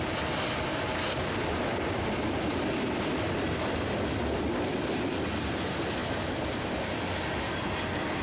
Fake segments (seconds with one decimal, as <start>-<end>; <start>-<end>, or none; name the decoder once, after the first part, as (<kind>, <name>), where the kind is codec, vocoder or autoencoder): none